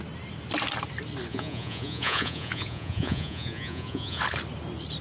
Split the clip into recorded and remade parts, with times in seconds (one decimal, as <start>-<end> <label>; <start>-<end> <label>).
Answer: 0.0-1.3 recorded; 1.3-4.2 remade; 4.2-5.0 recorded